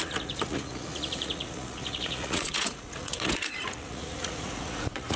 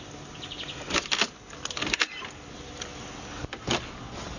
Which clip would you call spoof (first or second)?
first